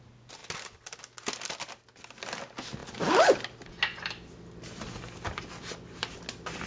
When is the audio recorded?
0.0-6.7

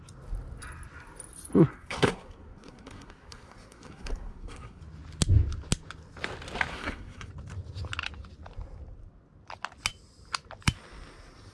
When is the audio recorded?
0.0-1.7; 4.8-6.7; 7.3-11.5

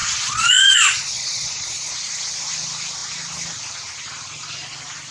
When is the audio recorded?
1.9-5.1

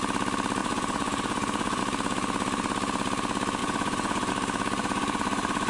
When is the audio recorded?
0.0-0.6; 1.8-3.6; 4.3-4.8